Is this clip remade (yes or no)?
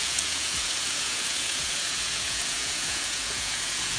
yes